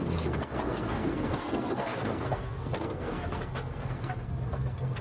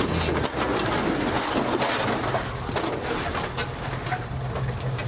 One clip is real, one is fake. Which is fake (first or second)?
first